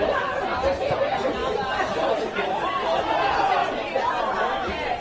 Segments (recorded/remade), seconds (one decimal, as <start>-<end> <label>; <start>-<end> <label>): 0.0-1.4 recorded; 1.4-3.0 remade; 3.0-5.0 recorded